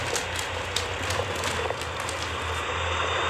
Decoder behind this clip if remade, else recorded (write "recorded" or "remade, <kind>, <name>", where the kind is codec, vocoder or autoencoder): recorded